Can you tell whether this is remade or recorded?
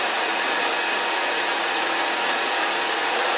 remade